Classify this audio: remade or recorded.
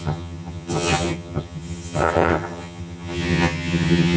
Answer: remade